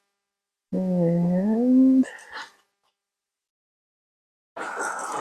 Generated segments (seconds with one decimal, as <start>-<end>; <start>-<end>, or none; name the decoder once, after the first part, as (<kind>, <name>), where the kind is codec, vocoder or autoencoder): none